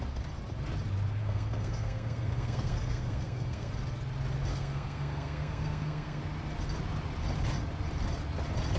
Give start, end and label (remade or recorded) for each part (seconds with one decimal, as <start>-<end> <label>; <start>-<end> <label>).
0.0-1.2 recorded; 1.2-3.7 remade; 3.7-4.5 recorded; 4.5-6.2 remade; 6.2-8.8 recorded